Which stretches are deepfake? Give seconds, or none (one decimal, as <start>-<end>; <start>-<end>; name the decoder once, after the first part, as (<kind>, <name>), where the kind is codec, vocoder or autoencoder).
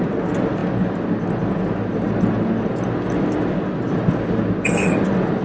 none